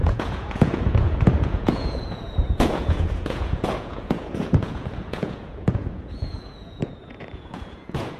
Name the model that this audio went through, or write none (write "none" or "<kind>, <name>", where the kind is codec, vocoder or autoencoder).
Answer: vocoder, Vocos